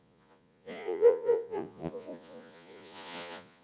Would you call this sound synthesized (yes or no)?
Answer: yes